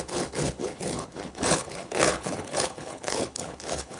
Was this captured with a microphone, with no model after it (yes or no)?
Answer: no